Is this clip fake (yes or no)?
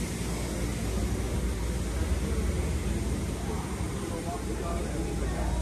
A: no